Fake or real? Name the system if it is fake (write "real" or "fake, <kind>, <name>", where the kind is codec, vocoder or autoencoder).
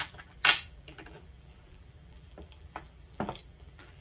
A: fake, vocoder, BigVGAN v2